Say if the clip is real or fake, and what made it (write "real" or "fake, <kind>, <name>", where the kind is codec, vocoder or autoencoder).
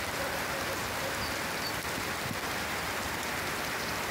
real